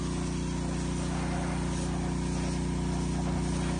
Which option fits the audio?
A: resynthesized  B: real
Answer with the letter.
B